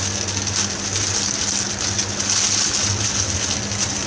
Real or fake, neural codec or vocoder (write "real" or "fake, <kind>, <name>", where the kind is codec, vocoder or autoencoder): real